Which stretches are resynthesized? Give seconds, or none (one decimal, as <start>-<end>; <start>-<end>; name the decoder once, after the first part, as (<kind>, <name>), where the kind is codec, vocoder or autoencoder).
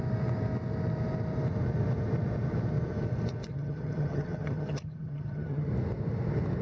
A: 3.5-5.7 (vocoder, HiFi-GAN)